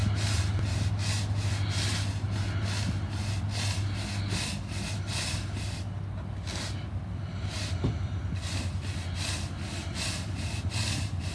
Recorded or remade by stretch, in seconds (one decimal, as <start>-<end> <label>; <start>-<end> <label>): 0.0-11.3 recorded